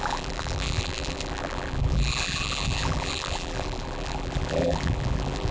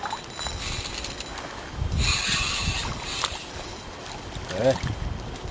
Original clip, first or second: second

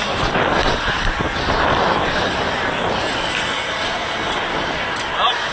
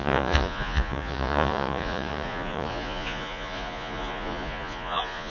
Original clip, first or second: first